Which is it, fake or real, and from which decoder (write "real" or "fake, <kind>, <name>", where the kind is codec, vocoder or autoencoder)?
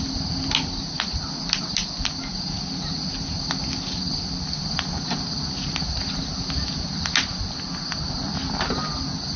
real